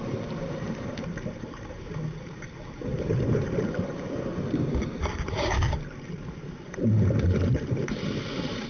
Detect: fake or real fake